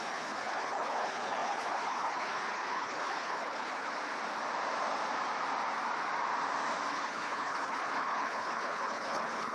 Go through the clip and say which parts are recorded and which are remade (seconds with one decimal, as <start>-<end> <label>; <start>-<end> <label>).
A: 0.0-3.9 remade; 3.9-6.9 recorded; 6.9-9.5 remade